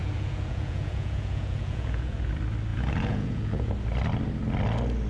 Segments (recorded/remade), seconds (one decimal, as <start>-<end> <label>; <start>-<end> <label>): 0.0-2.3 remade; 2.3-2.7 recorded; 2.7-3.7 remade; 3.7-5.1 recorded